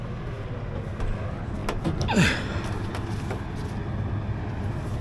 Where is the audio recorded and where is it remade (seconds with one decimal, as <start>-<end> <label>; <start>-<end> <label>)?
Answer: 0.0-5.0 recorded